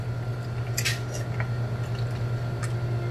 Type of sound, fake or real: real